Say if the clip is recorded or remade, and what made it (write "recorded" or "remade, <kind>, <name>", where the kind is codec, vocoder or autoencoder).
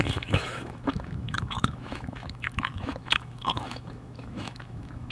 remade, autoencoder, DAC-VAE